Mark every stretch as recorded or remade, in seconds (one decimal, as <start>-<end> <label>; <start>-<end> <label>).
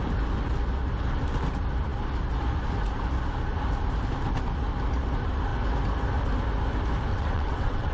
0.0-7.1 recorded; 7.1-7.9 remade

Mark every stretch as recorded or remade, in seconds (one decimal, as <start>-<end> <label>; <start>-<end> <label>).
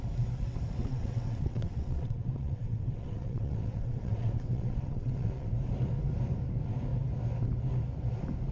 0.0-0.8 recorded; 0.8-5.5 remade; 5.5-8.5 recorded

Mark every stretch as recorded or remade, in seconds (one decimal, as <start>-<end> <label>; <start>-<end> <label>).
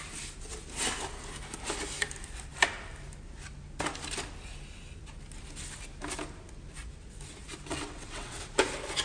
0.0-7.7 recorded; 7.7-8.4 remade; 8.4-9.0 recorded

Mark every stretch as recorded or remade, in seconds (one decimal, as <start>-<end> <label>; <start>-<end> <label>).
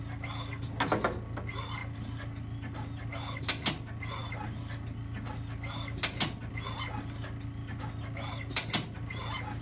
0.0-9.6 recorded